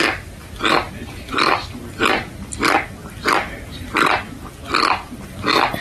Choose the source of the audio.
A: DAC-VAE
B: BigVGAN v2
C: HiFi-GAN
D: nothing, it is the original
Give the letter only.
D